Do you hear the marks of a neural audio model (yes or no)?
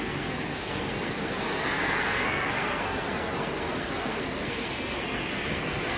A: yes